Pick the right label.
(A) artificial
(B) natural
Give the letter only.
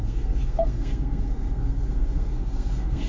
A